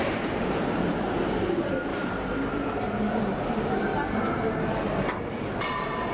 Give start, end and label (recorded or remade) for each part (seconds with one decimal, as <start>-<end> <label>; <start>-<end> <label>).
0.0-3.9 remade; 3.9-4.6 recorded; 4.6-6.1 remade